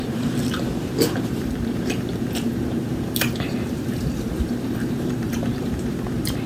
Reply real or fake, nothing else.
fake